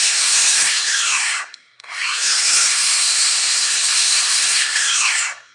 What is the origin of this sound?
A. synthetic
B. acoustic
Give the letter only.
A